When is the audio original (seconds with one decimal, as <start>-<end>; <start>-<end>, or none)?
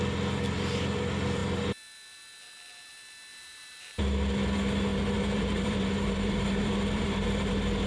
0.0-3.3; 4.0-4.9; 7.5-7.9